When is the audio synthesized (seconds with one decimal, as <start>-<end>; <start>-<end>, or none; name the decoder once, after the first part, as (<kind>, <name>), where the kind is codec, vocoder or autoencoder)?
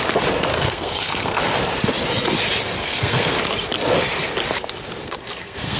0.5-1.4 (codec, SNAC); 2.8-3.4; 5.0-5.8